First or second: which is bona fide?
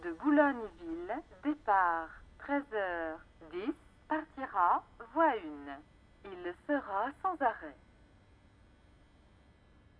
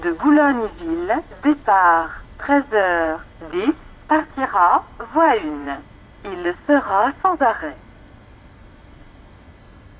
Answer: first